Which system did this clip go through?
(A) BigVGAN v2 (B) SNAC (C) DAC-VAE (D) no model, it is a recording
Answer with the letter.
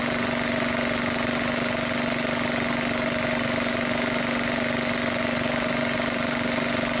D